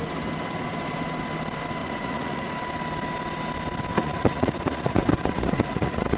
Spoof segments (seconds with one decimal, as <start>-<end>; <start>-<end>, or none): 1.8-2.5; 3.9-6.2